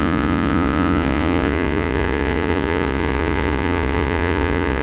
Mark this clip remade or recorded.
remade